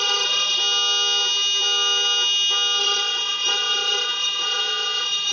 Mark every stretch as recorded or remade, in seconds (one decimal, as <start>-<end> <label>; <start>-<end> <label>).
0.0-0.6 remade; 0.6-2.8 recorded; 2.8-5.3 remade